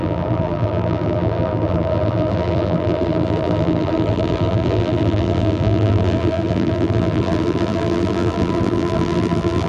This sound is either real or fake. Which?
fake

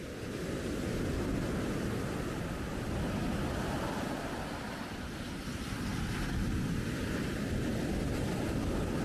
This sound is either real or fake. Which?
real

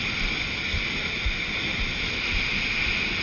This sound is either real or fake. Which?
real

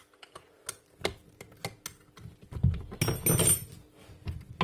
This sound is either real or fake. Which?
real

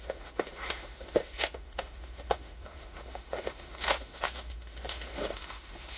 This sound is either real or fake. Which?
fake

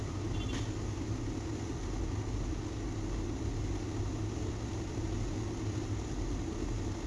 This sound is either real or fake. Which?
real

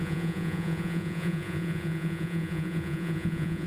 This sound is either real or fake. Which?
fake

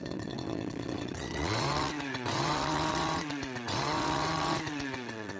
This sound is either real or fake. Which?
fake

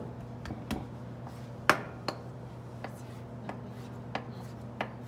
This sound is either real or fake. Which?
real